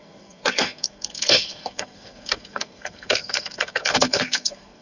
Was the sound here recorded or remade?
remade